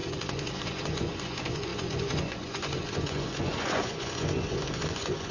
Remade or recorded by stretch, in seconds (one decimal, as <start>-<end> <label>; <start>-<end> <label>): 0.0-5.3 remade